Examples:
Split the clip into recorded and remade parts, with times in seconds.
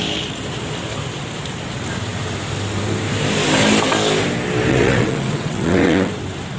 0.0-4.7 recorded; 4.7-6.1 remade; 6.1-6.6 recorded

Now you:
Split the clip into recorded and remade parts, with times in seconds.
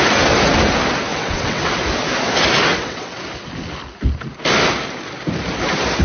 0.0-1.1 recorded; 1.1-1.7 remade; 1.7-2.7 recorded; 2.7-3.2 remade; 3.2-6.0 recorded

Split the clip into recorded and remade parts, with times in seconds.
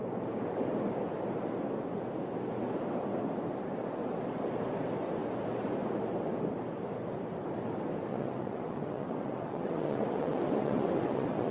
0.0-8.1 recorded; 8.1-11.5 remade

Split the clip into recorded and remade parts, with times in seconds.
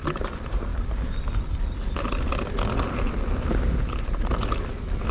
0.0-5.1 recorded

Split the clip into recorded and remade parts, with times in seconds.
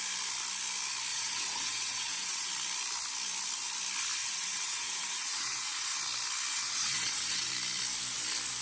0.0-1.1 recorded; 1.1-2.5 remade; 2.5-4.2 recorded; 4.2-6.0 remade; 6.0-6.5 recorded; 6.5-7.5 remade; 7.5-8.6 recorded